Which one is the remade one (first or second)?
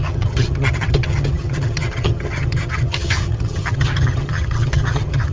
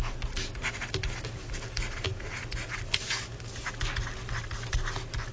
first